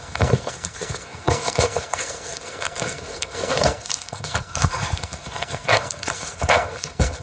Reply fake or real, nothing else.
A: fake